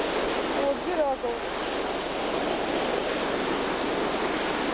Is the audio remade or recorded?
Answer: recorded